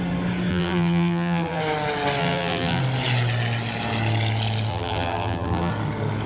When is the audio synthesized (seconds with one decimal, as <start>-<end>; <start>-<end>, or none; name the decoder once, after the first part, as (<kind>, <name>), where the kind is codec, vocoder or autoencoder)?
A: 0.5-1.6 (vocoder, BigVGAN v2); 2.2-2.8; 4.7-5.7